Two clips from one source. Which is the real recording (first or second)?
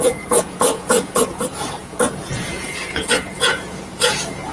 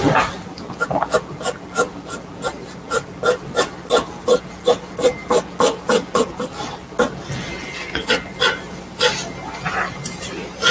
second